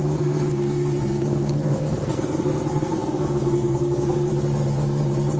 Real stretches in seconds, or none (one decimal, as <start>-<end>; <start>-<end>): 4.3-5.4